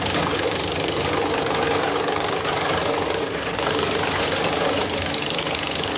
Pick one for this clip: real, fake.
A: fake